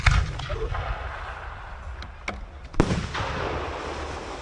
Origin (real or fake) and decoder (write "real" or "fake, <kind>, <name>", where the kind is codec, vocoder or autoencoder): real